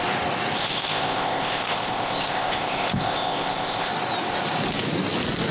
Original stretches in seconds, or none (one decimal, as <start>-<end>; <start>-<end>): 0.0-0.6; 3.9-5.5